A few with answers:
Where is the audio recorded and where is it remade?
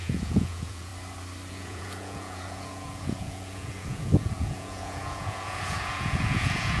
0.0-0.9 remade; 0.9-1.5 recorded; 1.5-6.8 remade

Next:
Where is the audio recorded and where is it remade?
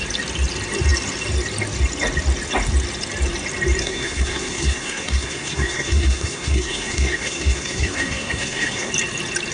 0.0-3.8 recorded; 3.8-8.9 remade; 8.9-9.5 recorded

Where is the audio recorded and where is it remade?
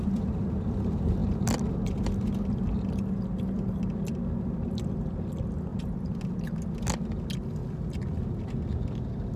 0.0-9.4 recorded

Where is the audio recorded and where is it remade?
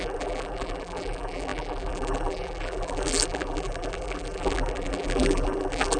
0.0-6.0 remade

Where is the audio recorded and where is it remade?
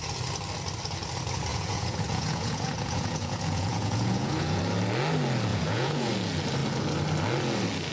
0.0-1.5 recorded; 1.5-4.6 remade; 4.6-5.5 recorded; 5.5-6.1 remade; 6.1-7.9 recorded